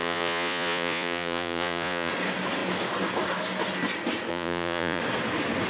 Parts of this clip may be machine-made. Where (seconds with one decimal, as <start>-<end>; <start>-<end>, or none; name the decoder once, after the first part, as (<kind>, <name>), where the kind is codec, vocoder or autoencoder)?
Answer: 0.0-2.1 (vocoder, Vocos); 4.3-5.0